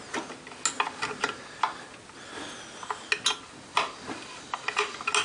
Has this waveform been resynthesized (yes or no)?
no